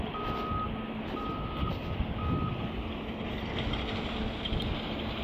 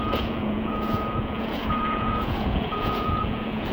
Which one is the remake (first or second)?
second